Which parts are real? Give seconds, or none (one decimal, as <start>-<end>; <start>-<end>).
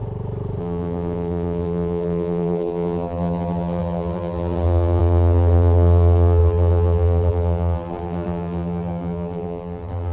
0.0-0.6